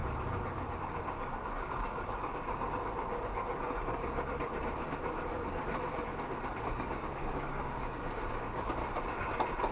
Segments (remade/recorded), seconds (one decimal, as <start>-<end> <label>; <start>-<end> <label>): 0.0-0.8 recorded; 0.8-4.0 remade; 4.0-6.6 recorded; 6.6-8.8 remade; 8.8-9.7 recorded